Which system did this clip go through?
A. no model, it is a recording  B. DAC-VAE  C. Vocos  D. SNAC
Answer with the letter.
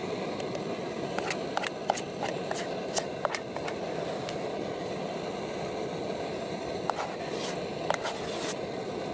A